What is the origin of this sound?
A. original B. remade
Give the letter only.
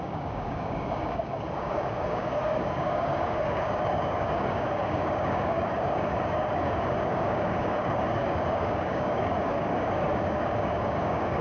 B